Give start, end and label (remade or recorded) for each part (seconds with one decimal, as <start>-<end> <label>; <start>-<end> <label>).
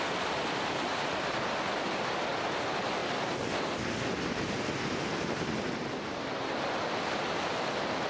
0.0-8.1 recorded